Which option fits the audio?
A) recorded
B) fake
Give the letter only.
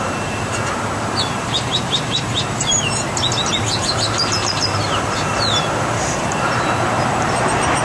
B